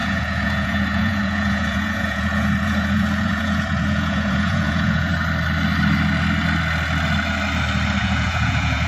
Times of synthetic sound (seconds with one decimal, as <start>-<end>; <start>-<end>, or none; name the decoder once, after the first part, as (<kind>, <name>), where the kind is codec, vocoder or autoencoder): 0.0-5.1 (vocoder, Vocos); 8.0-8.9